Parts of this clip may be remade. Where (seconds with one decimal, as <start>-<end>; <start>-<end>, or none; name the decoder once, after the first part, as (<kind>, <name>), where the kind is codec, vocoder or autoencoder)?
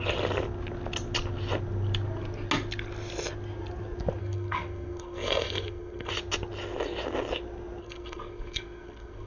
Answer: 4.2-6.1 (codec, SNAC); 7.8-9.3